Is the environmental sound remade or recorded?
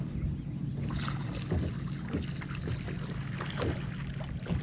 recorded